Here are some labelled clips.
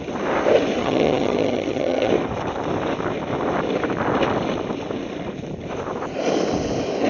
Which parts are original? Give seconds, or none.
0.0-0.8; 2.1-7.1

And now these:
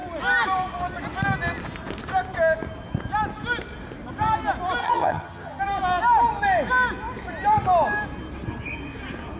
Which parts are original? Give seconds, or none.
0.0-4.8; 5.6-9.4

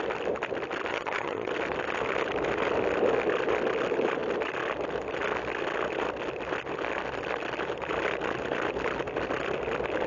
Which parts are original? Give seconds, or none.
0.0-0.9; 1.5-10.1

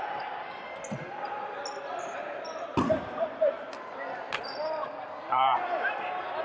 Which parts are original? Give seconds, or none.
0.0-6.4

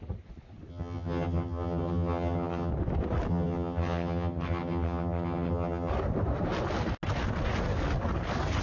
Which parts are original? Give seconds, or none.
0.0-0.7; 2.7-3.3; 5.9-8.6

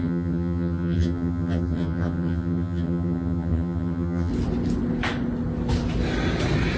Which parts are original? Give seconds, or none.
4.3-6.8

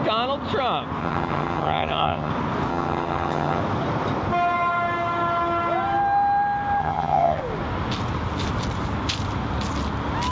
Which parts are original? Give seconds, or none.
0.0-1.0; 2.3-2.7; 3.6-6.8; 7.4-10.3